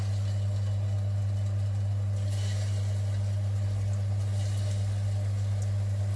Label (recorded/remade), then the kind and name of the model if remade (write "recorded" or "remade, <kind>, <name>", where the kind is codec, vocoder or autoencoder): recorded